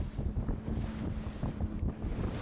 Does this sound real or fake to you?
real